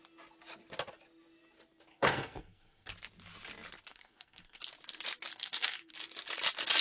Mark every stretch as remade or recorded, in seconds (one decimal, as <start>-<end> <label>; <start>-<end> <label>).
0.0-1.9 recorded; 1.9-2.9 remade; 2.9-3.9 recorded; 3.9-4.6 remade; 4.6-5.3 recorded; 5.3-5.9 remade; 5.9-6.8 recorded